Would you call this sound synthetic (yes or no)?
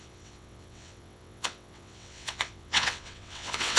yes